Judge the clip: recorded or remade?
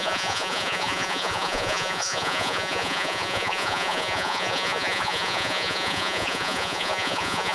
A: remade